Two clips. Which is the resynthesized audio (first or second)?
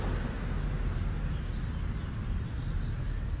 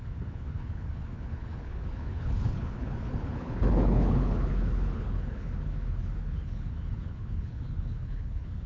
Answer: second